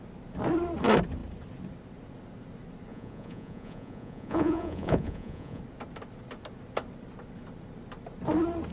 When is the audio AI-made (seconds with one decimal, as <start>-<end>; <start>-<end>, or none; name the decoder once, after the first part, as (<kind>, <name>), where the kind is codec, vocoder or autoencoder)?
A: 2.9-5.6 (vocoder, Vocos)